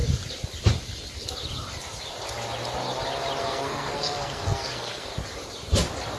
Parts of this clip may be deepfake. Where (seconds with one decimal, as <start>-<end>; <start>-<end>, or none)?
3.4-5.1